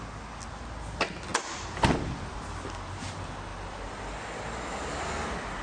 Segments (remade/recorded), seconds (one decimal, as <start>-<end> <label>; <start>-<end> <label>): 0.0-3.5 recorded; 3.5-4.0 remade; 4.0-5.6 recorded